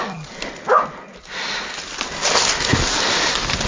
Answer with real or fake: real